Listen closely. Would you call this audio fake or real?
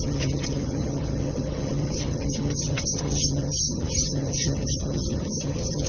fake